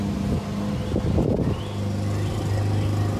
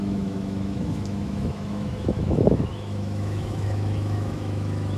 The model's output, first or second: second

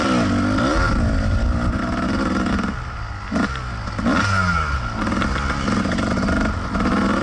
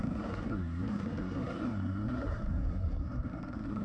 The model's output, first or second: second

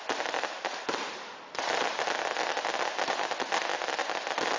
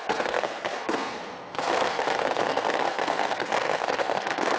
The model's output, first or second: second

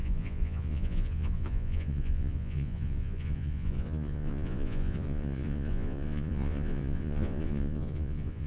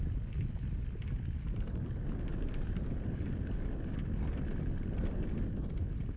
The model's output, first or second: first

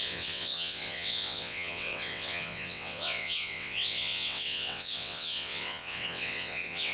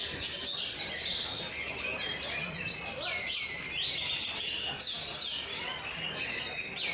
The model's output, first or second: first